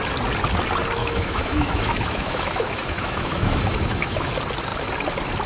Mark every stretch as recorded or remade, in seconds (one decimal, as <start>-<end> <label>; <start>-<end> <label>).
0.0-1.0 recorded; 1.0-4.3 remade; 4.3-5.5 recorded